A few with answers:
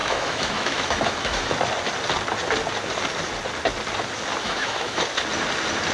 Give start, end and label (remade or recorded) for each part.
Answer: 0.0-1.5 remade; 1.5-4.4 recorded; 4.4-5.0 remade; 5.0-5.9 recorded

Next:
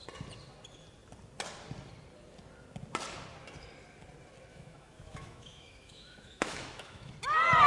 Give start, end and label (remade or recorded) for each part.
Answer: 0.0-4.5 recorded; 4.5-7.1 remade; 7.1-7.7 recorded

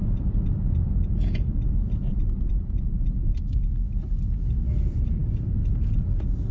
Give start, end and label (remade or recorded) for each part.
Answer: 0.0-0.6 recorded; 0.6-3.7 remade; 3.7-6.5 recorded

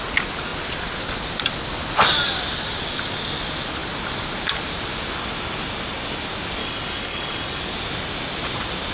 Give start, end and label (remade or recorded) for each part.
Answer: 0.0-6.6 recorded; 6.6-7.6 remade; 7.6-8.9 recorded

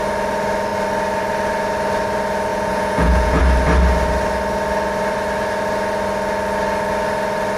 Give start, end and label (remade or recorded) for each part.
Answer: 0.0-2.5 recorded; 2.5-3.4 remade; 3.4-7.6 recorded

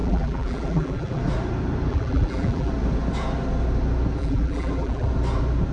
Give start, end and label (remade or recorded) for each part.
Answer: 0.0-1.2 remade; 1.2-1.9 recorded; 1.9-2.7 remade; 2.7-4.2 recorded; 4.2-5.1 remade; 5.1-5.7 recorded

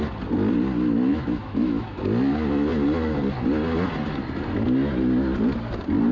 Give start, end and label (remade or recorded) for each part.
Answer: 0.0-1.1 recorded; 1.1-2.0 remade; 2.0-6.1 recorded